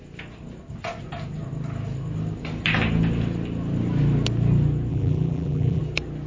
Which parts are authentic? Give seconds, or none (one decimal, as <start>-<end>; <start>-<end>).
0.0-4.9; 5.8-6.3